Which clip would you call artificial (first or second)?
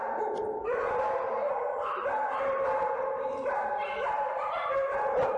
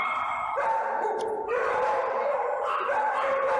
second